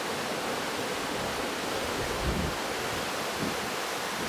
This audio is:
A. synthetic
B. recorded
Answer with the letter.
B